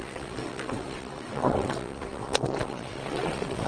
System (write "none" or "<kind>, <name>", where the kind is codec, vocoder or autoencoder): vocoder, WaveNeXt